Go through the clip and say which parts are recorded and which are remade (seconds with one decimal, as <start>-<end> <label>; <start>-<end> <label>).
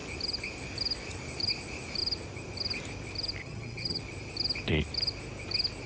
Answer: 0.0-3.4 recorded; 3.4-4.0 remade; 4.0-5.9 recorded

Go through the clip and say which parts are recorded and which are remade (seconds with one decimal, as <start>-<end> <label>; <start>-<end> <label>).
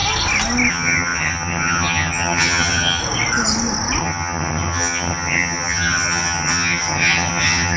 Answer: 0.0-0.7 recorded; 0.7-3.0 remade; 3.0-4.0 recorded; 4.0-7.8 remade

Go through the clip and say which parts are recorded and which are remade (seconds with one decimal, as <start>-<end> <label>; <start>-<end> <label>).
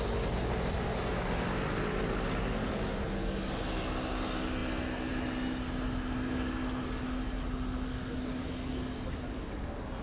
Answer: 0.0-10.0 recorded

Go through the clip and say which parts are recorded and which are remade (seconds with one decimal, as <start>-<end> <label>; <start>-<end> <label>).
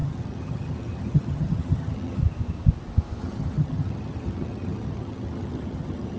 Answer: 0.0-2.2 remade; 2.2-3.2 recorded; 3.2-6.2 remade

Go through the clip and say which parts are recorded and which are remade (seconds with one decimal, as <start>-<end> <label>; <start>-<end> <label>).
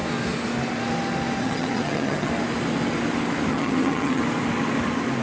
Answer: 0.0-1.4 recorded; 1.4-2.3 remade; 2.3-3.5 recorded; 3.5-4.2 remade; 4.2-5.2 recorded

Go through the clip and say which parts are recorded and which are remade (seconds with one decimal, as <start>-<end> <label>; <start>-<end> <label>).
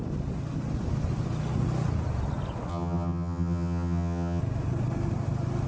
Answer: 0.0-2.7 recorded; 2.7-4.4 remade; 4.4-5.7 recorded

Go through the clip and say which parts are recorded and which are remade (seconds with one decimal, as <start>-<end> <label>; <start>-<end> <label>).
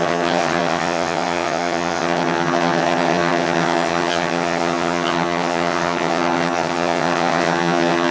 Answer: 0.0-8.1 remade